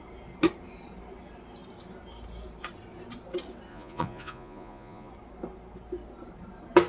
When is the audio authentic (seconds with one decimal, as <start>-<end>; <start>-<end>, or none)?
0.0-3.7; 5.1-6.9